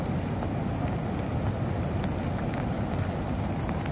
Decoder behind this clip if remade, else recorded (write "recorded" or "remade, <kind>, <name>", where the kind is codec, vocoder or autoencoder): recorded